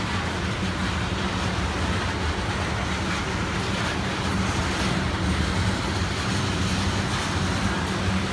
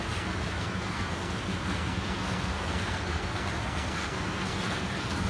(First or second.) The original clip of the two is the first